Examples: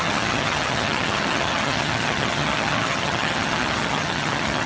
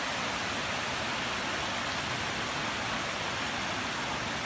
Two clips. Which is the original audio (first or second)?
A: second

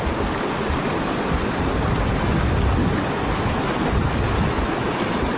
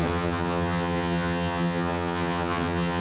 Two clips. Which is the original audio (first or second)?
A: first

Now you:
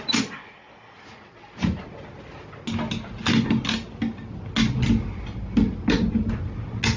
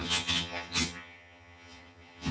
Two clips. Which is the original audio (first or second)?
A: first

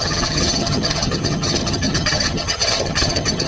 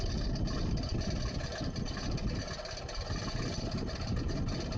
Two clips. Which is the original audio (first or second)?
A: second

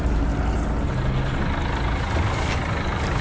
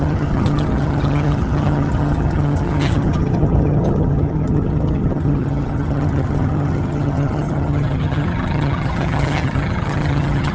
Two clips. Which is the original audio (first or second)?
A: first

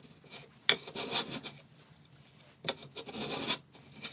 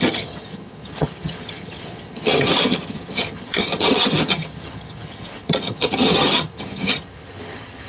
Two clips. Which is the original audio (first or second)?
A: first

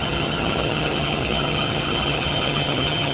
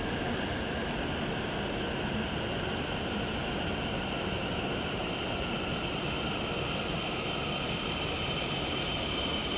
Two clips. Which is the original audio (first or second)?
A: second